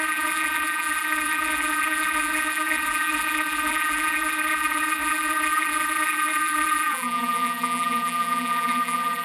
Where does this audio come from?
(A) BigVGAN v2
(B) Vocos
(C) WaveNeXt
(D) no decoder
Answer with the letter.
A